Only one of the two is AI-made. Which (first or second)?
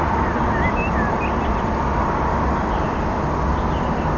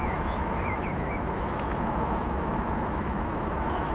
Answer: second